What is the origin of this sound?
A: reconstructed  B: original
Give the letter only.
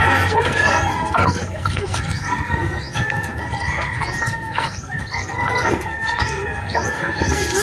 A